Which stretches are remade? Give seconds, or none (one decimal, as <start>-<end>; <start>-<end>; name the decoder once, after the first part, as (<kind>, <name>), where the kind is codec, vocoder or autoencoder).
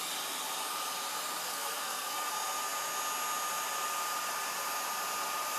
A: 1.4-2.3 (codec, SNAC)